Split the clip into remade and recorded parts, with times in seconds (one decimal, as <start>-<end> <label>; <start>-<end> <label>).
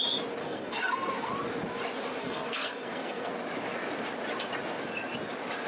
0.0-0.4 recorded; 0.4-1.3 remade; 1.3-2.2 recorded; 2.2-3.3 remade; 3.3-5.7 recorded